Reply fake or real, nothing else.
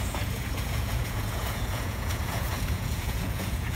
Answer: fake